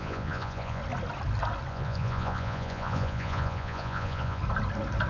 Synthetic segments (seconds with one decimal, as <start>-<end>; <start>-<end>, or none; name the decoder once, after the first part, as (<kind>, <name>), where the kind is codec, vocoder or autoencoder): 0.0-0.8 (vocoder, Vocos); 1.7-4.4